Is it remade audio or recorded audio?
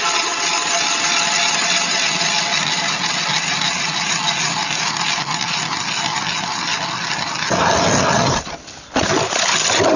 recorded